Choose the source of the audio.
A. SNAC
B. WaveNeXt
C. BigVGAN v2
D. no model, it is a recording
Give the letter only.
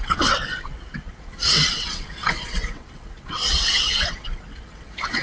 B